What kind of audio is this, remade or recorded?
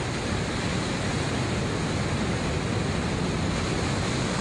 recorded